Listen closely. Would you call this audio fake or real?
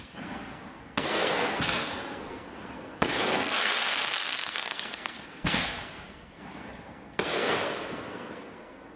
fake